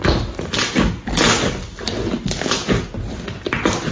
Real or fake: real